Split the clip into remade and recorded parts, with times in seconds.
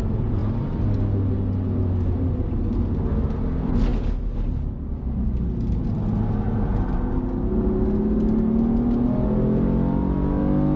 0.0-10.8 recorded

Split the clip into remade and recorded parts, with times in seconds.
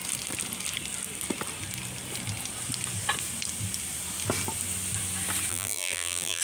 0.0-5.5 recorded; 5.5-6.4 remade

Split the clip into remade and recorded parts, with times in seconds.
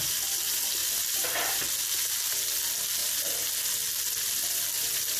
0.0-0.8 recorded; 0.8-1.6 remade; 1.6-4.4 recorded; 4.4-5.2 remade